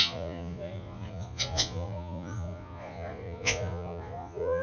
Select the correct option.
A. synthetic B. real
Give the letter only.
A